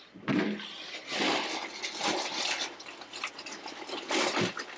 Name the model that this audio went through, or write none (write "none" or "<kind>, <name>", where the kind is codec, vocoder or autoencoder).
none